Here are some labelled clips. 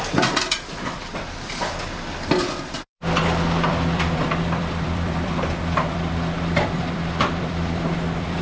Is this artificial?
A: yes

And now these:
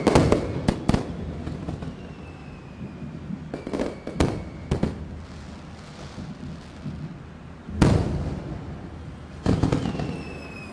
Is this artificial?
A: no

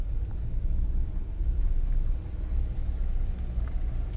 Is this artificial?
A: no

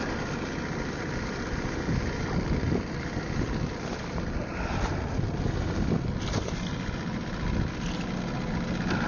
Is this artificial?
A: no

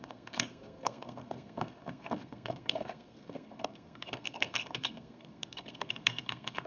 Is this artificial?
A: yes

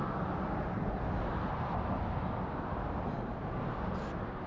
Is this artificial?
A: no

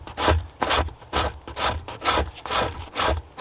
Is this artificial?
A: no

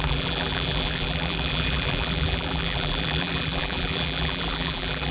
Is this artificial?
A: yes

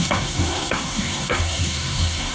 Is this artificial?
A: yes